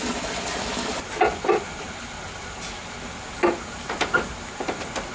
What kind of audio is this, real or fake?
real